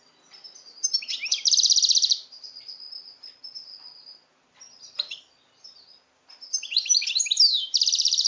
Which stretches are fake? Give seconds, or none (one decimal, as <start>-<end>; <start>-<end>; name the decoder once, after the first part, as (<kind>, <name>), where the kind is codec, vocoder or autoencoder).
none